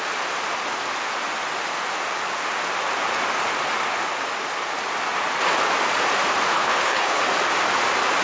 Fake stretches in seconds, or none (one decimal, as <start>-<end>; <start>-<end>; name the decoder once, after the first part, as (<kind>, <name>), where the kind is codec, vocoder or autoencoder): 6.5-7.2 (codec, HILCodec)